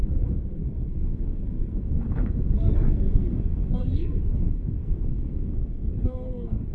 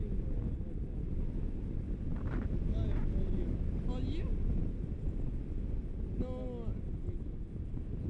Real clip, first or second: second